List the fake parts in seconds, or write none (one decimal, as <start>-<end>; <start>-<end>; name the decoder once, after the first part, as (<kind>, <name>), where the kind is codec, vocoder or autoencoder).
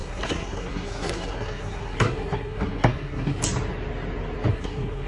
0.0-3.4 (codec, SNAC); 4.5-5.1